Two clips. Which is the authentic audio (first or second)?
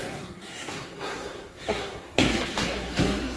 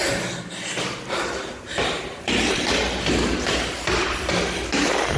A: second